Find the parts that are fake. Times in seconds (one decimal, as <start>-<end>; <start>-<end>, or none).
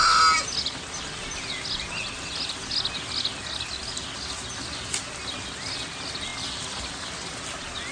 none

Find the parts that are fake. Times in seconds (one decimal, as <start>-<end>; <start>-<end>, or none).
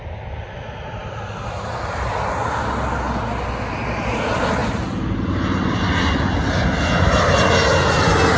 none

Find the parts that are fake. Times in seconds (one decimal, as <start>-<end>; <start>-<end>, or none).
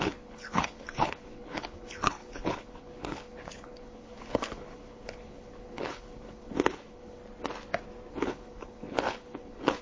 0.0-7.2; 8.1-9.8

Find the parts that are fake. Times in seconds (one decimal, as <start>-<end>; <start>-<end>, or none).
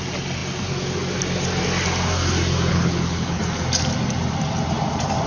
2.7-3.4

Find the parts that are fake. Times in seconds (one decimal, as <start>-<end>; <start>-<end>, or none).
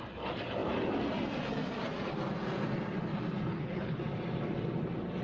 3.5-4.0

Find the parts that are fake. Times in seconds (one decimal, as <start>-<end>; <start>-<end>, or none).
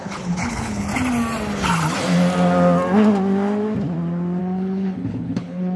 0.0-0.9; 4.4-5.8